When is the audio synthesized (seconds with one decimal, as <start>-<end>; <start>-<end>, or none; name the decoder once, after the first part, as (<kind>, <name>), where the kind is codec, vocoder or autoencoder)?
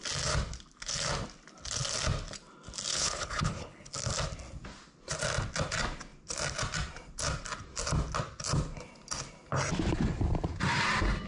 2.9-3.9 (codec, HILCodec)